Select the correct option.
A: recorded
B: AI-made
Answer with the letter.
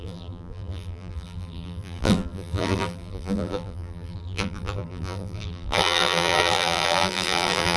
B